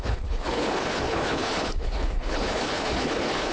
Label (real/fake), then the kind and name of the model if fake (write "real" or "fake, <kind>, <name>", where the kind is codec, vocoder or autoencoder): fake, codec, HILCodec